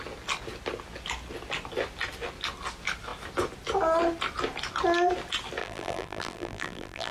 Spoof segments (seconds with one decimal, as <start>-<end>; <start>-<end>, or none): 5.6-7.1